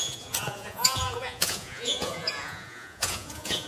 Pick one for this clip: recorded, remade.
remade